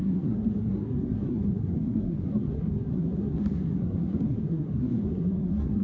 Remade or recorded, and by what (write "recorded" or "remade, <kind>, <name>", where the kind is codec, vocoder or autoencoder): remade, codec, SNAC